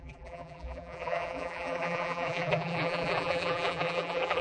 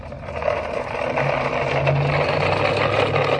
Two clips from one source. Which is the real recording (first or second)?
second